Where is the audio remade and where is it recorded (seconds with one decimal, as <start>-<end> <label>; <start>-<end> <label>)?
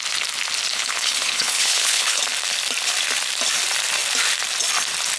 0.0-0.7 recorded; 0.7-2.2 remade; 2.2-5.2 recorded